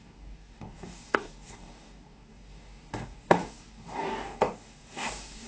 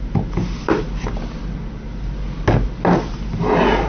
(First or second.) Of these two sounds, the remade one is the first